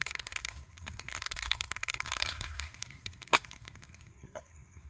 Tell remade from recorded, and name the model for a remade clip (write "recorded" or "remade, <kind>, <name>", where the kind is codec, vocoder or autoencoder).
remade, codec, SNAC